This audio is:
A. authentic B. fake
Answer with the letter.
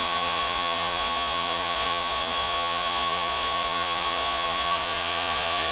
B